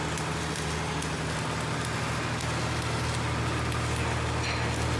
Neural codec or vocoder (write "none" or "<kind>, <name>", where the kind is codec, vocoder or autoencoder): none